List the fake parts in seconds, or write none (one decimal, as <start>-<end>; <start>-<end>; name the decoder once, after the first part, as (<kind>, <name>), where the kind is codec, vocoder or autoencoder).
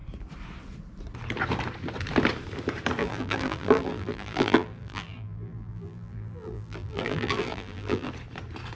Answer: 3.0-8.1 (vocoder, BigVGAN v2)